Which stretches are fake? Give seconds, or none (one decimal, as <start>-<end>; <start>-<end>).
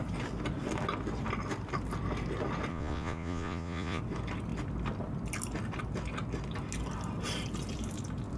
2.7-4.0